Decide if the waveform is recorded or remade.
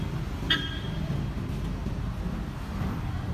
recorded